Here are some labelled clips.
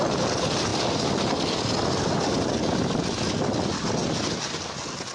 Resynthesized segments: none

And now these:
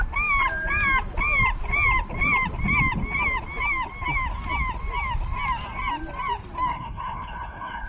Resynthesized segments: 6.7-7.9 (codec, HILCodec)

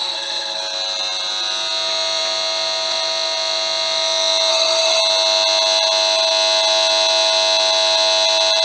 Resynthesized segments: 0.0-0.6 (codec, SNAC); 4.5-5.0